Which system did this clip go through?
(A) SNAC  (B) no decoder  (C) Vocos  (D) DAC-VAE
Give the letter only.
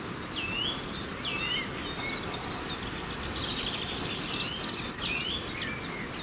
B